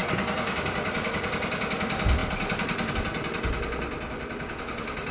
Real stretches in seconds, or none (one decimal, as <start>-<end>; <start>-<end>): 1.3-5.1